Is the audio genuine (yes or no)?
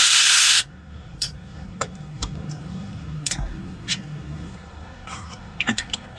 no